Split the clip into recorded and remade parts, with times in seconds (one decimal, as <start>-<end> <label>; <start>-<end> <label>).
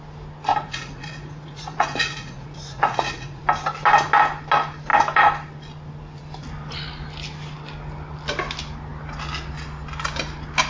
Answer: 0.0-0.5 recorded; 0.5-3.4 remade; 3.4-10.7 recorded